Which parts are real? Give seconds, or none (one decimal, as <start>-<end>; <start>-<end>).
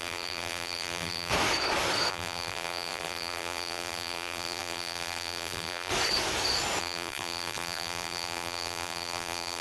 1.3-2.1; 5.9-6.8